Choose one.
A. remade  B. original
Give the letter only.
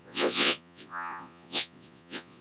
A